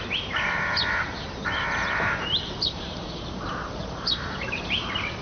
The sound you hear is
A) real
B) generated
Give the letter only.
B